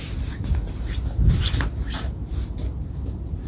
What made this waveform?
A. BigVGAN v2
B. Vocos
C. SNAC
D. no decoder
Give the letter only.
D